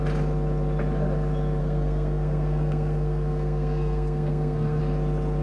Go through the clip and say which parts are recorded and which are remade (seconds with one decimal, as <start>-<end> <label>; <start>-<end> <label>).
0.0-1.6 recorded; 1.6-4.8 remade; 4.8-5.4 recorded